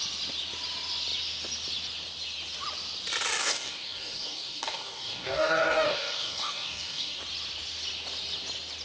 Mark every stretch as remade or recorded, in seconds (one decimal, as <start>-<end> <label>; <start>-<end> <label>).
0.0-3.4 recorded; 3.4-7.2 remade; 7.2-8.8 recorded